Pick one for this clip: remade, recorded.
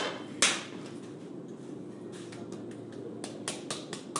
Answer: recorded